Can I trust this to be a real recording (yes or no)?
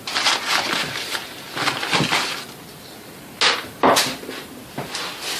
yes